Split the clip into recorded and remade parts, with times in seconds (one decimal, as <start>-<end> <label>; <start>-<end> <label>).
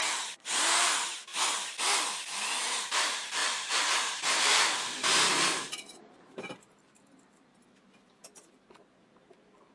0.0-1.3 remade; 1.3-2.6 recorded; 2.6-9.7 remade